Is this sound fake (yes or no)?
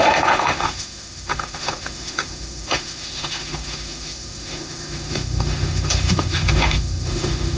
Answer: yes